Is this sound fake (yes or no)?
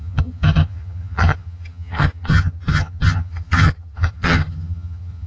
yes